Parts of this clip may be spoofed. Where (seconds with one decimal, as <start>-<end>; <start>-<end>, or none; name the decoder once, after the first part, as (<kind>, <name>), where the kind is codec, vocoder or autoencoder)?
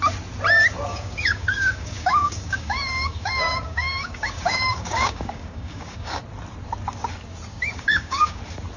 0.9-6.2 (codec, DAC); 7.5-8.4